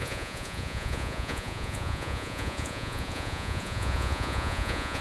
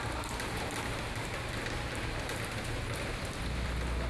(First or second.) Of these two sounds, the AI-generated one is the first